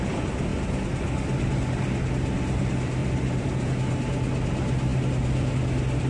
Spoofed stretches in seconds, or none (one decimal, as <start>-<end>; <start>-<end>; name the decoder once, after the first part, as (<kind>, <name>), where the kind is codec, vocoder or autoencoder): 3.0-3.7 (vocoder, BigVGAN v2); 4.9-5.5